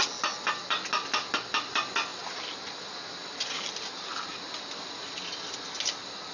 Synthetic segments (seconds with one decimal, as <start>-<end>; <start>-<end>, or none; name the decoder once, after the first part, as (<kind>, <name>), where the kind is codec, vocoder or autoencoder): none